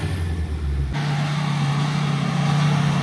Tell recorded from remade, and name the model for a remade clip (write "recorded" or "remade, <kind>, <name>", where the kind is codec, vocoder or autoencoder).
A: recorded